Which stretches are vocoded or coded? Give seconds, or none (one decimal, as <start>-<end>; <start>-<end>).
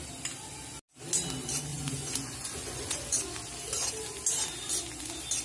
1.7-3.2